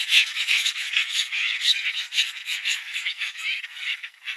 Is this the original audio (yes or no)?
no